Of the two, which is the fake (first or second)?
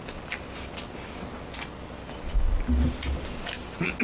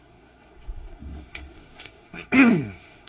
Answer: second